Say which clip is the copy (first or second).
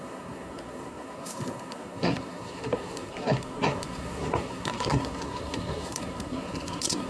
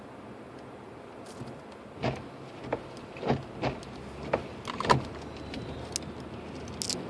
first